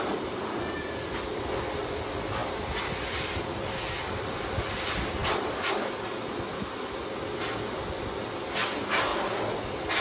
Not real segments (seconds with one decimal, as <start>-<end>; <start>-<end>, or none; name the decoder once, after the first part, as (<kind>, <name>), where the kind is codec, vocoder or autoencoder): none

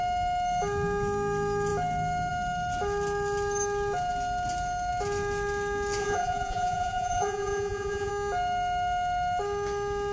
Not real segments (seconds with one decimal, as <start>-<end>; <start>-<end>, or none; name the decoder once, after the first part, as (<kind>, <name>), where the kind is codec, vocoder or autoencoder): 6.0-8.1 (vocoder, Vocos)

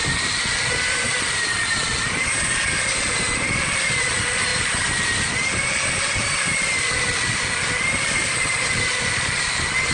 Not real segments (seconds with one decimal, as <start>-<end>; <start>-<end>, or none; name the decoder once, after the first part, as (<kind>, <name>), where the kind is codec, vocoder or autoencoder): none

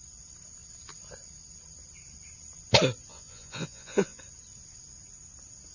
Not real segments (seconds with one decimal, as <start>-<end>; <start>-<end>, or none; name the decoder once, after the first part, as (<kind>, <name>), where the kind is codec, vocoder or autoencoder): 3.1-4.2 (vocoder, Vocos)

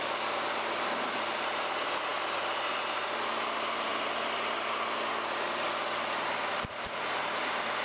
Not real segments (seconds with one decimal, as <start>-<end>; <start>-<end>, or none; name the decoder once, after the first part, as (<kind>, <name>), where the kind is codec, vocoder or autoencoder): none

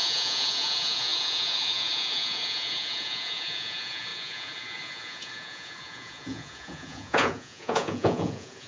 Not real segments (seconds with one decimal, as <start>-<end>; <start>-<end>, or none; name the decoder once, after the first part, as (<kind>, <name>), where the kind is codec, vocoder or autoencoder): 0.0-8.7 (vocoder, Vocos)

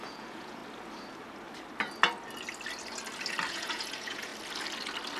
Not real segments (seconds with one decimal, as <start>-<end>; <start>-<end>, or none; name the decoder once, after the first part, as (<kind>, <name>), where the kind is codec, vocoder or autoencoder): 0.0-0.6 (vocoder, Vocos); 3.5-4.3